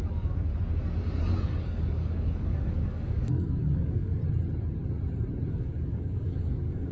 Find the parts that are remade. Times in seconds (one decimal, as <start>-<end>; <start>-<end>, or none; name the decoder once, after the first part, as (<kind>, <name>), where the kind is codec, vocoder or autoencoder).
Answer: 0.0-0.5 (codec, DAC); 1.6-4.2; 5.5-6.9